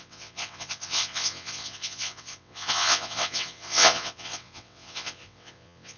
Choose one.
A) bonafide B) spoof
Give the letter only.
B